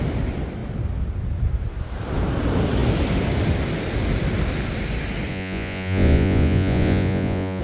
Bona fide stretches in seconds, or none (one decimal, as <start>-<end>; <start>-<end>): 0.0-5.3